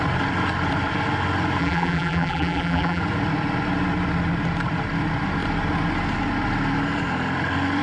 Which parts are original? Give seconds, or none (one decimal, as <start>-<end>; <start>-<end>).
0.0-1.6; 3.0-7.8